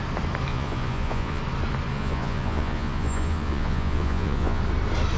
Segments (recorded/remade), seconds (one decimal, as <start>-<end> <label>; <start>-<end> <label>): 0.0-0.5 recorded; 0.5-1.4 remade; 1.4-1.9 recorded; 1.9-4.6 remade; 4.6-5.2 recorded